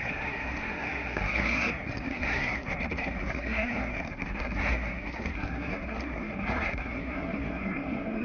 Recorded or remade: remade